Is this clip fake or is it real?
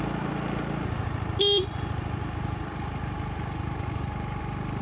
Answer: real